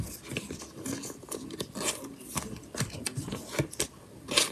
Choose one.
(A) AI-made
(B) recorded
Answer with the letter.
B